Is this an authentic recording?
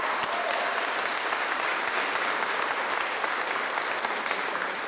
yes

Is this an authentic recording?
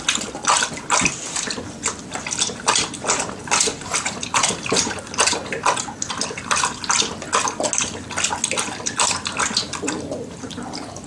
yes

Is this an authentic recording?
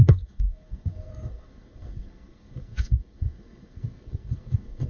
no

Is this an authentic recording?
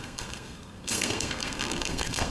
no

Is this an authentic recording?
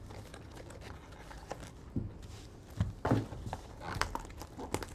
yes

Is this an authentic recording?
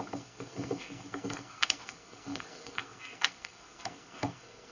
no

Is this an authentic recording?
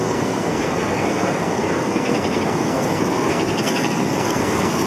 no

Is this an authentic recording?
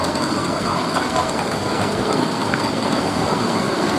no